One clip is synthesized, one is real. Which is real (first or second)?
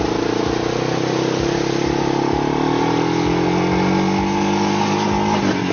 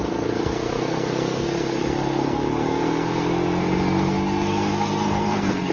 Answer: first